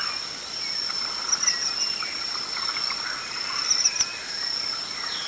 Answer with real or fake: real